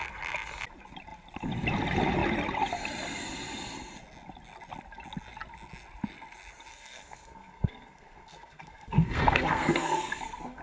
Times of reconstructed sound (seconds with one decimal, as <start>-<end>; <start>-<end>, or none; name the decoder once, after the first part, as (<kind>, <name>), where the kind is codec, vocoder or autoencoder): 6.7-10.6 (codec, SNAC)